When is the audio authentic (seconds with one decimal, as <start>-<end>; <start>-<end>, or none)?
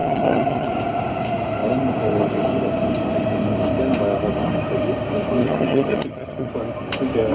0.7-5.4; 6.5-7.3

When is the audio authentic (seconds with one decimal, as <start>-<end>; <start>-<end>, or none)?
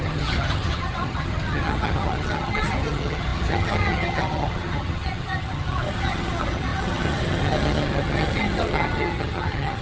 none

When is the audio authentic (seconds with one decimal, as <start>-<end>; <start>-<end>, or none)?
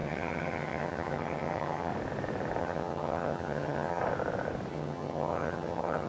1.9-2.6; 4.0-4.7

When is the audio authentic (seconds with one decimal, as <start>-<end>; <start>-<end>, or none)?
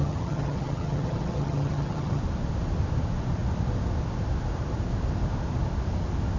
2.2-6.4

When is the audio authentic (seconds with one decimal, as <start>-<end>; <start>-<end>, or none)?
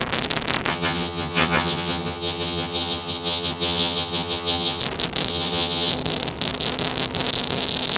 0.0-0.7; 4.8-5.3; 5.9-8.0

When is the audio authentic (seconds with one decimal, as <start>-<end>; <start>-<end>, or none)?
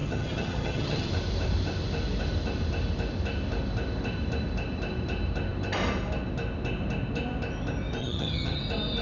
1.1-8.0; 8.6-9.0